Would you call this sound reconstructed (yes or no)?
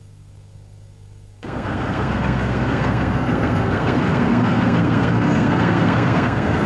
yes